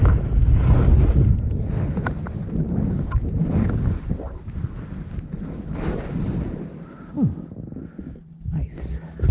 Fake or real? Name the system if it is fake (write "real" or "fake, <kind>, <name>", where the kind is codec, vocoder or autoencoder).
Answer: real